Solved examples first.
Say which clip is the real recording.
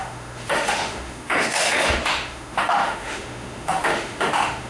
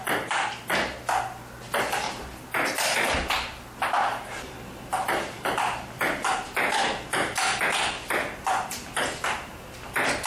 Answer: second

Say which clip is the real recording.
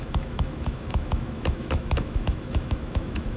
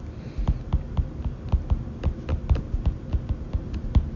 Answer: second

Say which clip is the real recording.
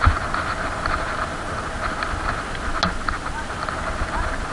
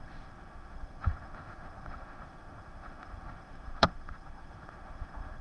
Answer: first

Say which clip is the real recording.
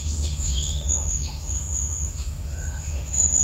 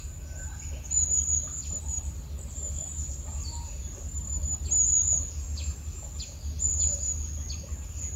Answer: second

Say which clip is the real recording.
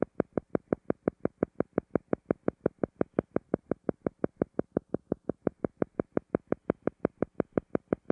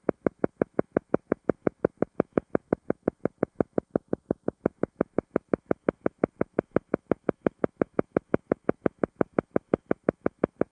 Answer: first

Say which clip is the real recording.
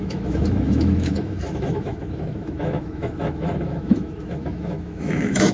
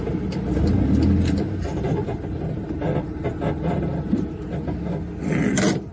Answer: second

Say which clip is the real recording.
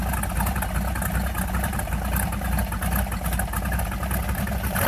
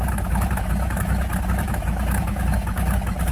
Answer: first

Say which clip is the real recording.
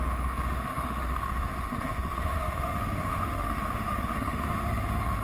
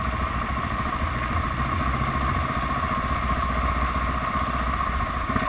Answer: second